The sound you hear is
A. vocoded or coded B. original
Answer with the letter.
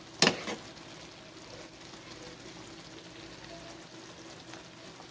B